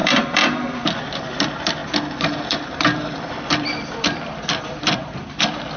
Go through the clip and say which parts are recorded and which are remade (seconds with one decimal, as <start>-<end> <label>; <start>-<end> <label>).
0.0-5.8 remade